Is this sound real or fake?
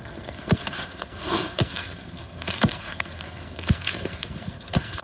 fake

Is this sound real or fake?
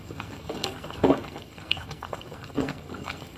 fake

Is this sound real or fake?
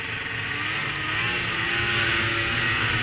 real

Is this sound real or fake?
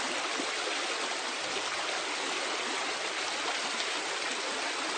real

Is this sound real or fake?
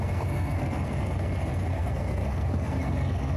fake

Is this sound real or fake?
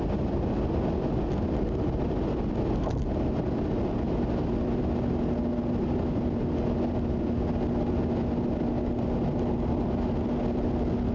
real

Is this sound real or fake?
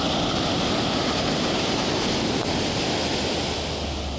real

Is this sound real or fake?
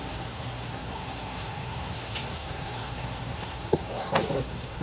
fake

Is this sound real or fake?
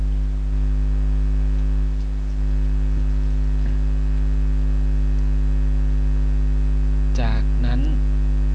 real